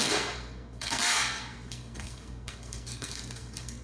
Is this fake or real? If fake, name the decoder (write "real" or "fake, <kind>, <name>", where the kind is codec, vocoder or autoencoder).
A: fake, codec, SNAC